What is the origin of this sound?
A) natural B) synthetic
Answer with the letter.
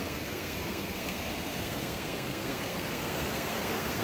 B